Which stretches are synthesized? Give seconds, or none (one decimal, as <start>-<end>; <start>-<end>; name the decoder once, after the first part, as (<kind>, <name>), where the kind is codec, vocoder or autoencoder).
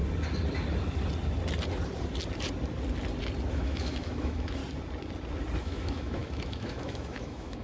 3.5-4.6 (autoencoder, DAC-VAE); 5.6-7.6